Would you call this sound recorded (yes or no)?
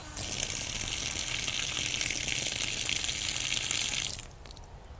yes